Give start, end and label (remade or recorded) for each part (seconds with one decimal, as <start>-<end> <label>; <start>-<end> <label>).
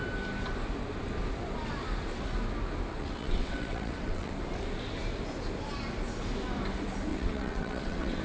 0.0-2.9 recorded; 2.9-4.3 remade; 4.3-7.1 recorded; 7.1-8.2 remade